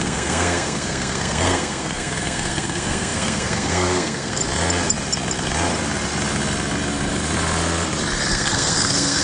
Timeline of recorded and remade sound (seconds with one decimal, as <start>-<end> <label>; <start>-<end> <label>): 0.0-4.4 remade; 4.4-8.3 recorded; 8.3-9.2 remade